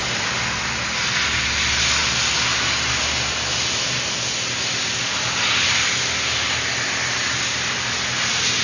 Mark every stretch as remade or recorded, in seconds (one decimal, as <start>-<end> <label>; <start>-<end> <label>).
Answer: 0.0-8.6 recorded